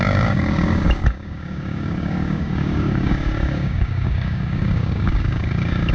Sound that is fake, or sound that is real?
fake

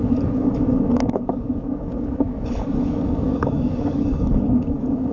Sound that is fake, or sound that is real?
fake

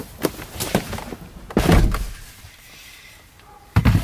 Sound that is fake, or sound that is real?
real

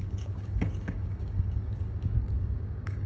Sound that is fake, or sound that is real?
fake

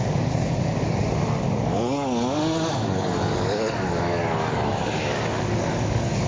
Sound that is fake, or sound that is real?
fake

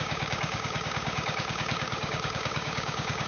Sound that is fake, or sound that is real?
fake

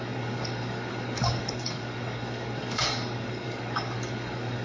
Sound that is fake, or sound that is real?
fake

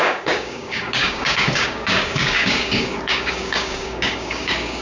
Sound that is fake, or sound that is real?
fake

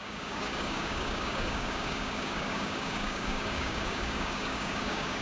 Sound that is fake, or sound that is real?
fake